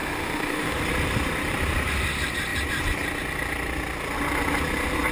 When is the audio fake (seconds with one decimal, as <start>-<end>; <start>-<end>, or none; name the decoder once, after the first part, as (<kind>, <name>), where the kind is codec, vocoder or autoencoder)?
0.0-0.8 (autoencoder, DAC-VAE)